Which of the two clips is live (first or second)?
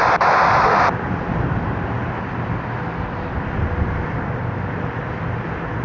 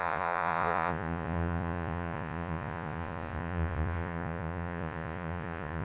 first